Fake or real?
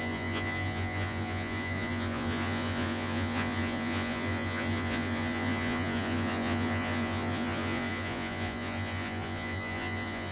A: fake